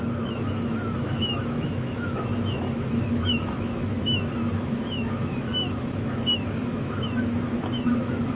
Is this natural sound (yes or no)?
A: no